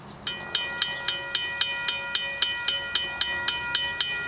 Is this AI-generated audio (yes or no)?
no